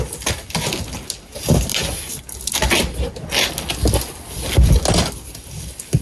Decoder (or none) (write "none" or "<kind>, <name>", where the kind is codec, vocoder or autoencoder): none